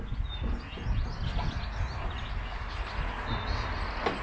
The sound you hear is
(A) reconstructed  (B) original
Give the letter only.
B